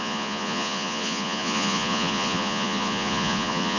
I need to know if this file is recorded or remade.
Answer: remade